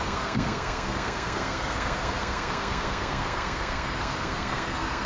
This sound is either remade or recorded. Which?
remade